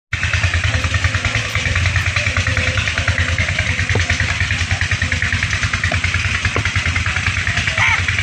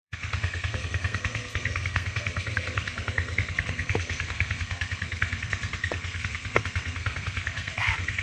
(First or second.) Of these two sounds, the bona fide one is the first